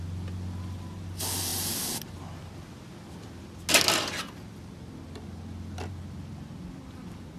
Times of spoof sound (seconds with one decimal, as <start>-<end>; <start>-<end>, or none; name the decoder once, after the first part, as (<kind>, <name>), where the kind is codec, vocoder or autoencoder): none